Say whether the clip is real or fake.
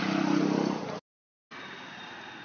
real